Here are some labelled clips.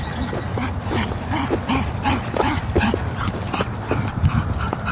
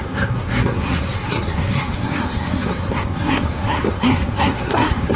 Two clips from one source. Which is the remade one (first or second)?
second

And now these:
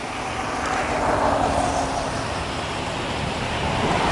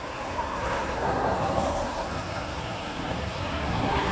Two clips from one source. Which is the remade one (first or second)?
second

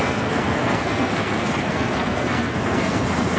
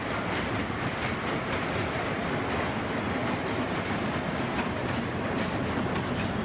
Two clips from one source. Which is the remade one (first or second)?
first